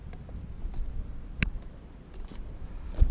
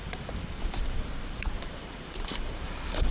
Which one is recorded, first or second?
first